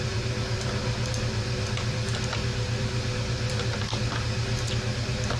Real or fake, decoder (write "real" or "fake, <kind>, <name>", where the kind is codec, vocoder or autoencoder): fake, vocoder, BigVGAN v2